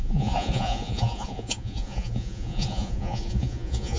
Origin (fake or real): fake